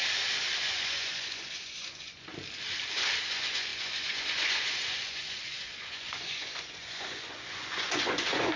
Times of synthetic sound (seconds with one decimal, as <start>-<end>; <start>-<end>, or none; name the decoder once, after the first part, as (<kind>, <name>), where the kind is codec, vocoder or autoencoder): 0.6-2.3 (vocoder, Vocos); 3.3-8.6